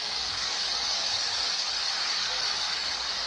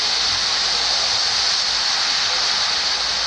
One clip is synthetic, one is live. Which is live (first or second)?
second